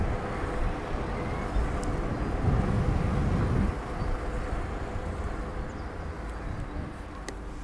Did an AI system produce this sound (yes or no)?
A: no